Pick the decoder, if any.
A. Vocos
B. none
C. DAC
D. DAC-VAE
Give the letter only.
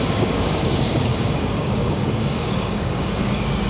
C